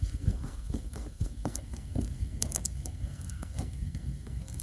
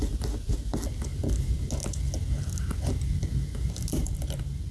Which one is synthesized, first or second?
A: first